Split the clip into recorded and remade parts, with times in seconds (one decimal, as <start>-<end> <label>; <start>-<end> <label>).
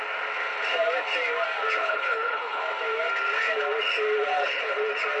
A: 0.0-1.8 recorded; 1.8-2.6 remade; 2.6-4.3 recorded; 4.3-4.8 remade; 4.8-5.2 recorded